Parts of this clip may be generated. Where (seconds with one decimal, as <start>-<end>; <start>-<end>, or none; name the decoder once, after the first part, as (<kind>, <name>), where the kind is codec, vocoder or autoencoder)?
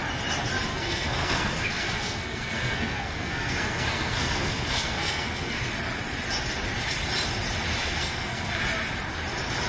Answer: 0.7-5.6 (codec, SNAC); 7.8-8.6